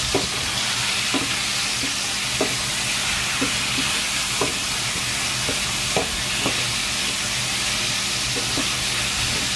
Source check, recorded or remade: recorded